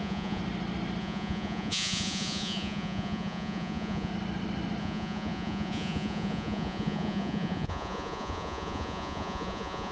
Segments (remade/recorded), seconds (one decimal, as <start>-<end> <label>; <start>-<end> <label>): 0.0-0.4 remade; 0.4-1.0 recorded; 1.0-4.1 remade; 4.1-4.8 recorded; 4.8-9.9 remade